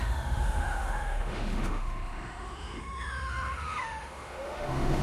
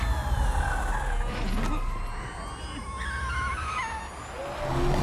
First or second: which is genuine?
second